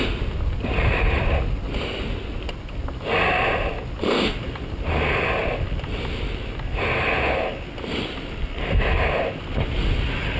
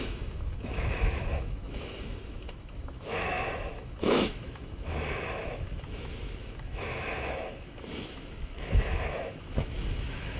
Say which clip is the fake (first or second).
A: second